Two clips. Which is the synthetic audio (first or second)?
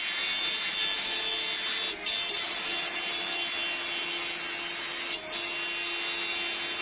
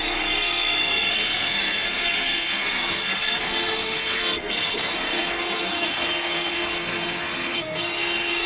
second